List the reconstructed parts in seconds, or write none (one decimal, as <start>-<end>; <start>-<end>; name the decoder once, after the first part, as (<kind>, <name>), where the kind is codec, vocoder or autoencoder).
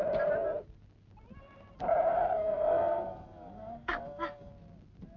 2.1-4.5 (codec, DAC)